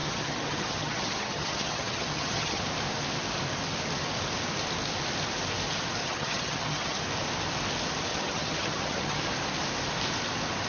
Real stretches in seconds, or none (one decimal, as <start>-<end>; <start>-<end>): 2.6-6.0; 7.0-8.1; 9.2-10.7